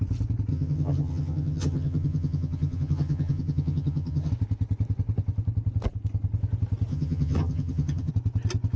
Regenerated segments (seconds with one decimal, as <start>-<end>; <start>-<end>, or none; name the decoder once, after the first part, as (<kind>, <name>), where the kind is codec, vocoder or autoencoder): 0.5-4.3 (vocoder, HiFi-GAN); 6.9-8.1